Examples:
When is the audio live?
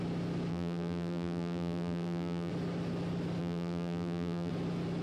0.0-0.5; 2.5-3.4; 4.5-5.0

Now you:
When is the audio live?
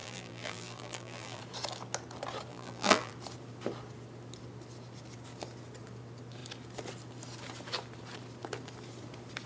1.4-2.5; 3.1-9.5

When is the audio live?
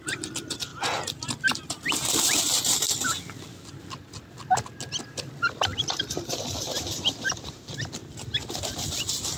0.7-5.0; 8.0-9.4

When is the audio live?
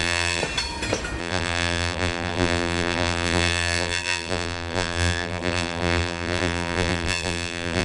0.4-1.2